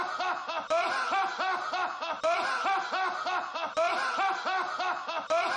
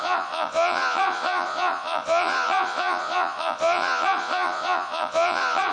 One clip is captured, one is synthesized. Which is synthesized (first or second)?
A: second